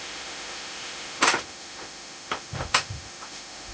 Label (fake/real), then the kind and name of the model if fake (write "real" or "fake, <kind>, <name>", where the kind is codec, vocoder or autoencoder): fake, autoencoder, DAC-VAE